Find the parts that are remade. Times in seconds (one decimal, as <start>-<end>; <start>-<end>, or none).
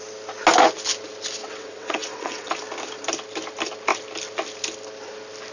1.4-2.5